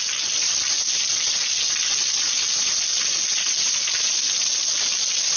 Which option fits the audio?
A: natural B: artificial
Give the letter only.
A